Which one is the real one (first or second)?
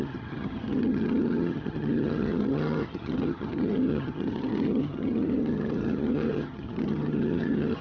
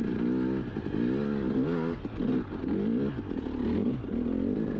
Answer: second